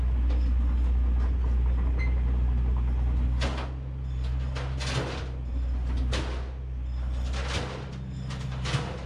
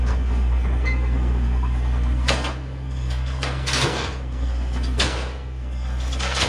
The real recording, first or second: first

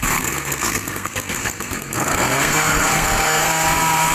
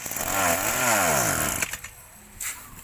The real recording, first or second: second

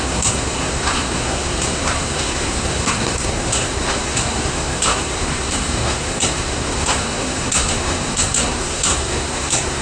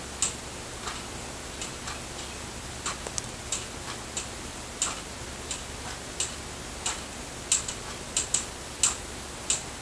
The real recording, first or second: second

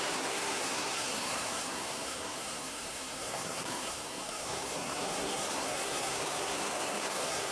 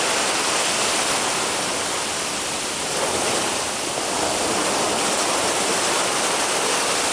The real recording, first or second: second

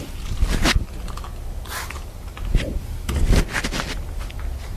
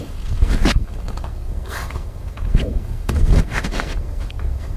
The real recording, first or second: first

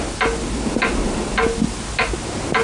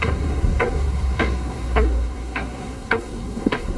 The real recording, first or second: first